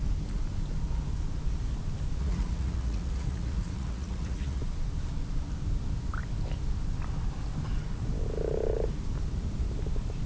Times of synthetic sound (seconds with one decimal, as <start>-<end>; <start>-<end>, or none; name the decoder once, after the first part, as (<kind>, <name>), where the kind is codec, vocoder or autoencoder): 2.2-4.6 (vocoder, Vocos)